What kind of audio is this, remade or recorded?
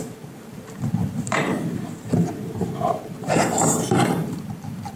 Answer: remade